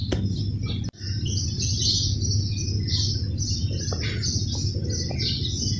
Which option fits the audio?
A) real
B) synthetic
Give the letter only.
A